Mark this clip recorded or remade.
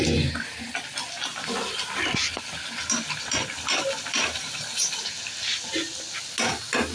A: recorded